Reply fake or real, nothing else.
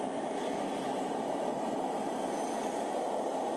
real